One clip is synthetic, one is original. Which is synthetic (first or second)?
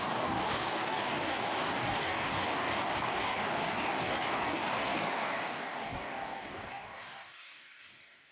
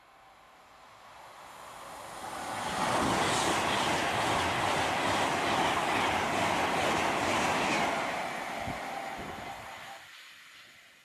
first